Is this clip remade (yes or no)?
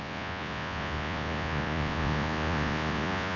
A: yes